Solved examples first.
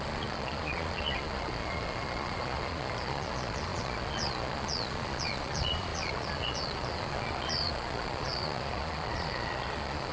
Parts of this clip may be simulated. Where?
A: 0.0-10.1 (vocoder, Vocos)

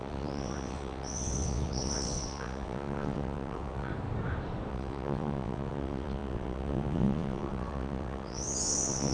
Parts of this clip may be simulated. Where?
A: 0.0-3.9 (vocoder, WaveNeXt); 4.7-9.1

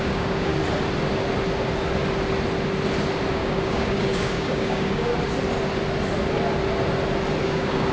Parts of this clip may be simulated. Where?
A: 0.0-0.5 (codec, DAC); 3.3-5.1; 7.4-7.9

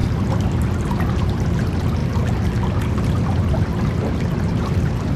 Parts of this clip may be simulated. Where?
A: 0.9-2.0 (vocoder, BigVGAN v2); 4.6-5.2

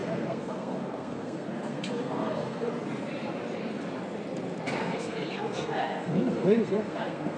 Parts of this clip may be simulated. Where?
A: 0.0-2.7 (codec, SNAC); 4.8-7.4